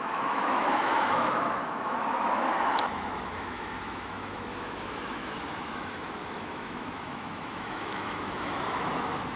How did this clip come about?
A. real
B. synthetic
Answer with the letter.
B